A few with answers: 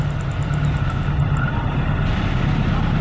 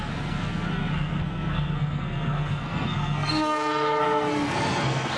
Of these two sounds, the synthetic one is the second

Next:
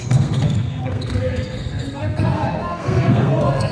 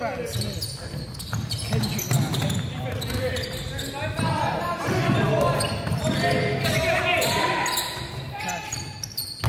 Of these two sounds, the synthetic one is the first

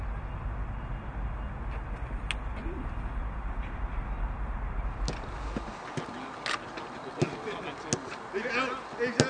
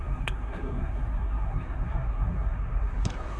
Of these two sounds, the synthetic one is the second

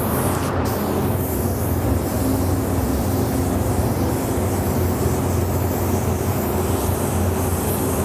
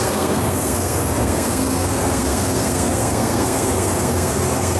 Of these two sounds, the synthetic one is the second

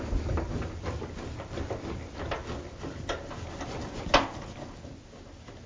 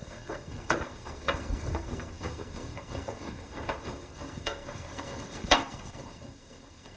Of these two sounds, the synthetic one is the second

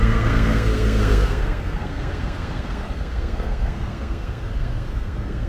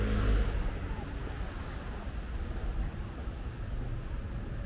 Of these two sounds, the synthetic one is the first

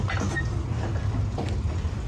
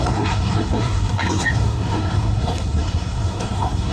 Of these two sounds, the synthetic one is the second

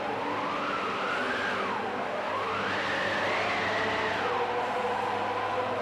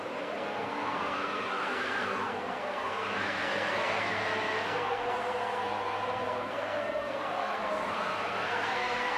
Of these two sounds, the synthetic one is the second